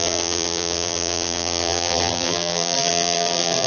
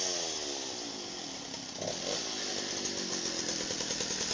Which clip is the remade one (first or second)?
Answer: first